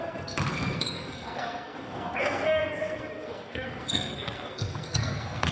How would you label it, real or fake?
fake